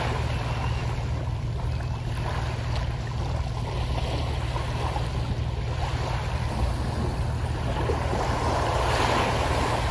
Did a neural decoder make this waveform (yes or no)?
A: no